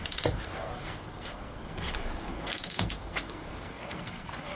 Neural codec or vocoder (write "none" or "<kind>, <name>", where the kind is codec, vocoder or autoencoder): codec, SNAC